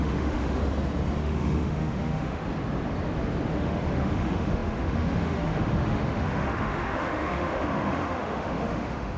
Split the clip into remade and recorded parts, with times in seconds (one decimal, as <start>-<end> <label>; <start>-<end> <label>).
0.0-0.6 remade; 0.6-1.2 recorded; 1.2-2.4 remade; 2.4-3.5 recorded; 3.5-9.2 remade